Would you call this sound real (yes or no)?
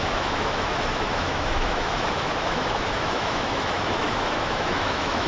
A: no